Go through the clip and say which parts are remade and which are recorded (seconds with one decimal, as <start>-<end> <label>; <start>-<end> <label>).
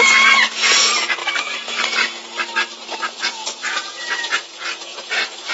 0.0-1.2 remade; 1.2-2.9 recorded; 2.9-5.5 remade